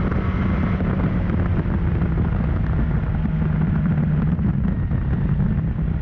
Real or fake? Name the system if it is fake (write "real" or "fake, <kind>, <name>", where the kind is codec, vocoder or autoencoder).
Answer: real